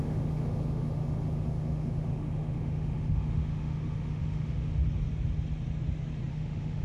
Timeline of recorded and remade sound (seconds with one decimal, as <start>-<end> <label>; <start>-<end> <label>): 0.0-4.8 remade; 4.8-6.3 recorded; 6.3-6.8 remade